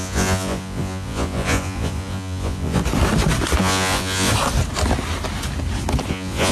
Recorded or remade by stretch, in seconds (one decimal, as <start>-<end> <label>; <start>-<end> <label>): 0.0-2.8 remade; 2.8-3.6 recorded; 3.6-4.3 remade; 4.3-6.1 recorded; 6.1-6.5 remade

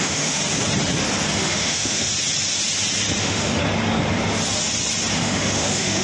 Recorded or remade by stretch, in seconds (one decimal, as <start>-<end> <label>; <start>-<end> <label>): 0.0-0.4 remade; 0.4-1.3 recorded; 1.3-2.1 remade; 2.1-3.2 recorded; 3.2-3.6 remade; 3.6-5.1 recorded; 5.1-6.0 remade